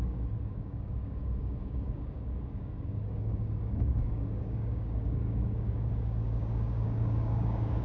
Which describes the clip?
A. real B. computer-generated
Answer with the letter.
B